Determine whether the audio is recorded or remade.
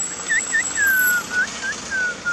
recorded